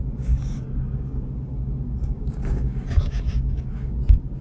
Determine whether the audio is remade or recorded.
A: remade